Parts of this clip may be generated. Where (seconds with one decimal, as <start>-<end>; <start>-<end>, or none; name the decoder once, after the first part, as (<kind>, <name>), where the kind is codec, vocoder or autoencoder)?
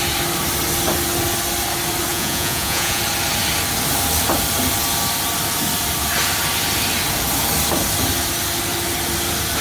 2.1-3.0 (vocoder, Vocos)